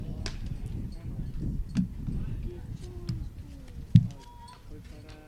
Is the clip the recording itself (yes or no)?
yes